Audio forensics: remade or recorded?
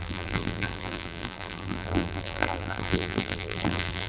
remade